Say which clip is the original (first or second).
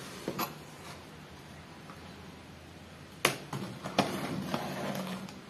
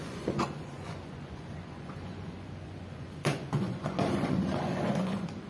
first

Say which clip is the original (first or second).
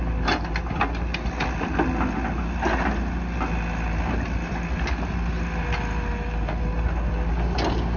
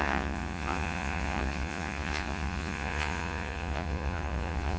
first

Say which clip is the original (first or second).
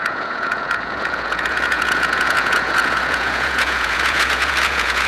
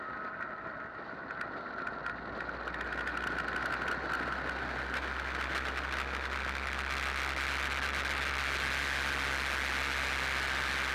second